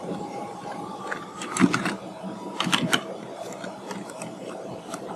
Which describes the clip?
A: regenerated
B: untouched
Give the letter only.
A